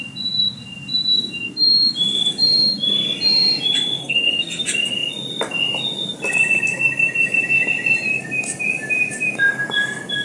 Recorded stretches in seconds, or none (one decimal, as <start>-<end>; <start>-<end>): 0.0-4.0; 4.6-10.2